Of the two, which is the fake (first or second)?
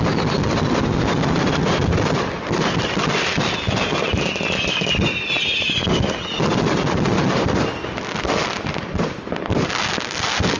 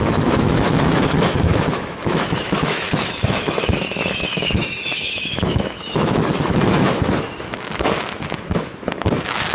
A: second